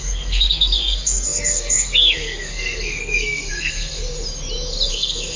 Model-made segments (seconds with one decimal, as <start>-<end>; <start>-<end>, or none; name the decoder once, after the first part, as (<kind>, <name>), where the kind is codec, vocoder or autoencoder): 0.0-4.0 (codec, SNAC); 4.9-5.4